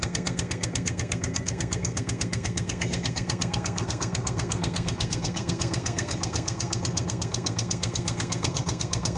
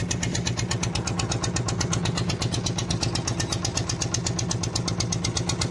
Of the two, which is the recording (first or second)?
second